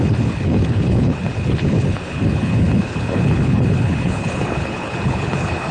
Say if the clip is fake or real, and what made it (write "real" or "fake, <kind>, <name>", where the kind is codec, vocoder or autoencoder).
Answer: fake, codec, HILCodec